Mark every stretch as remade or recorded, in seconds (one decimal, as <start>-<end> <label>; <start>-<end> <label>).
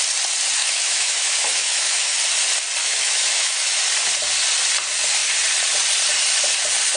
0.0-0.6 recorded; 0.6-2.2 remade; 2.2-2.8 recorded; 2.8-3.8 remade; 3.8-7.0 recorded